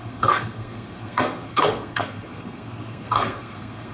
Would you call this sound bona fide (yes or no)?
no